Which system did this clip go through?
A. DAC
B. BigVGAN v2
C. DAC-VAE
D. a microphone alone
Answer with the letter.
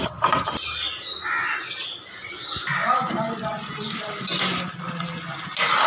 D